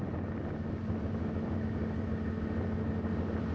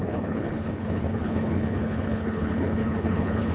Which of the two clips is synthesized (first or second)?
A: second